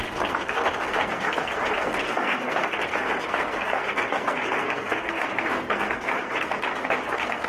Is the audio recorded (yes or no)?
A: no